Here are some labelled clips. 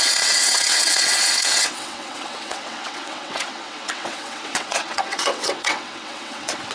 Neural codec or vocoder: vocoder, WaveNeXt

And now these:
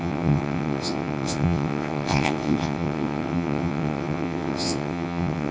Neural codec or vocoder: vocoder, WaveNeXt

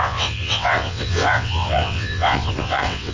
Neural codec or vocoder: vocoder, WaveNeXt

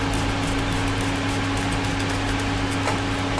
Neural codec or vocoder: none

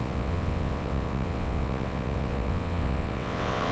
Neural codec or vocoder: vocoder, WaveNeXt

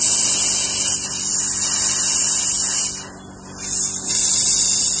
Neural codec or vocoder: none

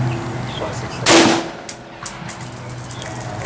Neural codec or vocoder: none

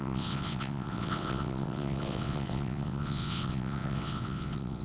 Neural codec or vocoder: vocoder, WaveNeXt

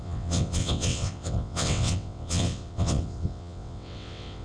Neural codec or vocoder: vocoder, WaveNeXt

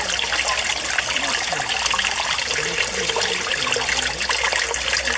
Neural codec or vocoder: none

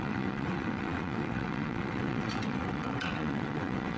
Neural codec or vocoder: vocoder, WaveNeXt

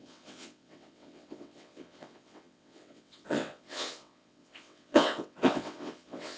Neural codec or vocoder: vocoder, WaveNeXt